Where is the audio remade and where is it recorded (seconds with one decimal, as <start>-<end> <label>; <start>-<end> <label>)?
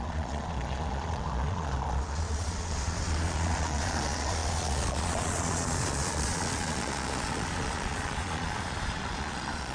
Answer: 0.0-9.7 remade